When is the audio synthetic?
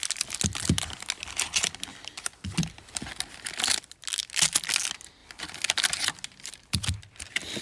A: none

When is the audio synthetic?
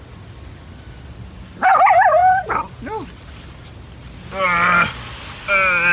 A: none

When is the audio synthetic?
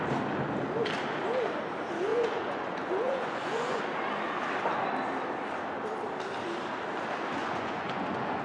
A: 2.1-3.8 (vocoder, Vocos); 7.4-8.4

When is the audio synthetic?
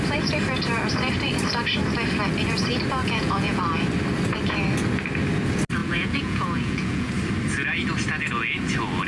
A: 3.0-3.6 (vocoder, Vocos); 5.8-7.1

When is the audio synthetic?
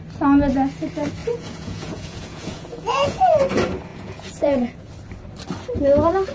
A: 1.2-3.4 (vocoder, Vocos); 3.9-4.9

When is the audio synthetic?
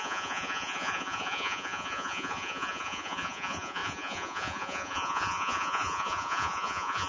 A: 0.0-7.1 (vocoder, Vocos)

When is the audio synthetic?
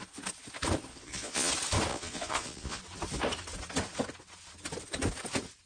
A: 0.9-1.5 (vocoder, Vocos); 1.9-2.8